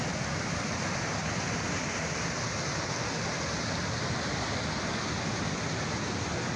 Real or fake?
real